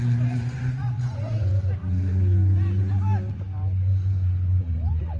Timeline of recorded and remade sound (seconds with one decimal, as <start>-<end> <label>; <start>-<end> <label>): 0.0-1.5 remade; 1.5-4.6 recorded; 4.6-5.2 remade